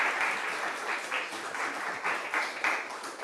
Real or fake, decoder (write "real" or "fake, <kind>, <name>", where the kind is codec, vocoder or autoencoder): real